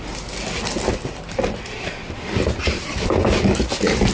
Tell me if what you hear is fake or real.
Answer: real